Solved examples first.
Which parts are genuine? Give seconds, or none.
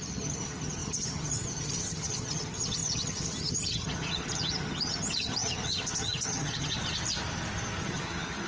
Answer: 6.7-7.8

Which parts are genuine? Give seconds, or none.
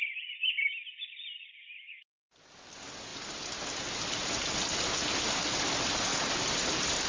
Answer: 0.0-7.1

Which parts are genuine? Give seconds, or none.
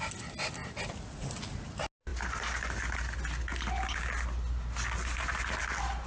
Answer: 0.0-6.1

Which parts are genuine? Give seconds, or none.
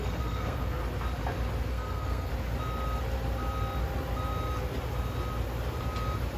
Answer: 0.8-1.7; 2.3-6.4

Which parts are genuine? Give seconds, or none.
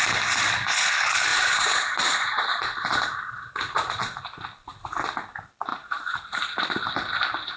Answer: 0.0-1.3; 4.2-5.7; 6.9-7.6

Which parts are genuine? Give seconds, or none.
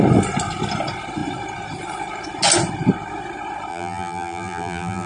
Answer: 0.0-3.7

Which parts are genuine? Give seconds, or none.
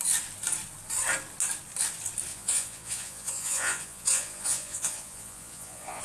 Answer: 0.0-2.3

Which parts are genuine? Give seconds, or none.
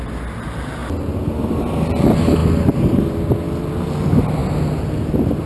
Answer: 0.0-5.5